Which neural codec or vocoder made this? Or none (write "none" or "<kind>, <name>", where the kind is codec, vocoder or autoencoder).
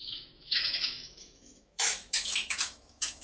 autoencoder, DAC-VAE